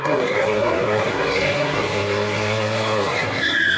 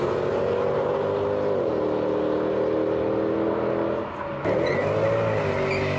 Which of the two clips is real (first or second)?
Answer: second